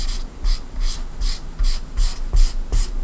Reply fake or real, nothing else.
real